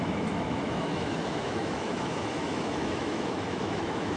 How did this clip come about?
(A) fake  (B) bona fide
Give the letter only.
A